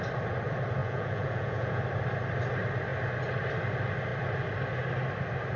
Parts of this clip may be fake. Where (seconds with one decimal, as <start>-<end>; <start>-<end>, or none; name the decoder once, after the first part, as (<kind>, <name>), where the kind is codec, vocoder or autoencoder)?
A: 0.8-1.8 (vocoder, Vocos)